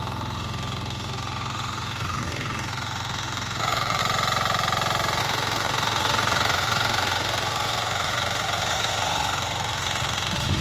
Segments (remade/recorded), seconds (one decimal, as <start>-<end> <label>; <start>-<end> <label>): 0.0-4.0 remade; 4.0-5.2 recorded; 5.2-10.6 remade